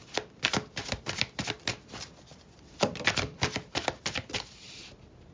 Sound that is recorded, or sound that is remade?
recorded